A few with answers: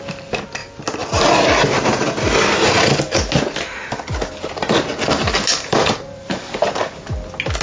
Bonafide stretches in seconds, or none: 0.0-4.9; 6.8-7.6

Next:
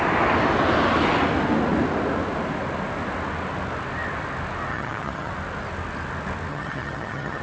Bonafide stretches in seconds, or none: 0.0-4.7; 5.3-6.5

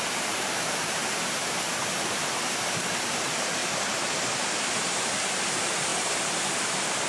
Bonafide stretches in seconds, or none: 3.6-4.7

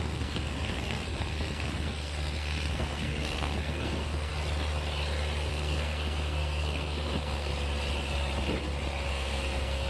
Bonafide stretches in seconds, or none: 4.3-5.5; 7.5-9.1

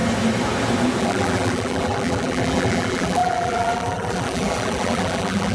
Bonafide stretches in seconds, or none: 0.0-1.0

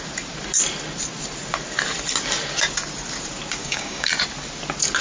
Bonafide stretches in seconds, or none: 0.0-3.6; 4.1-5.0

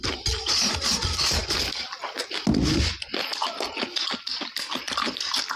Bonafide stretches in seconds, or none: 0.0-5.6

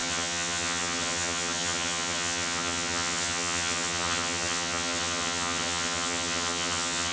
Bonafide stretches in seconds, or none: none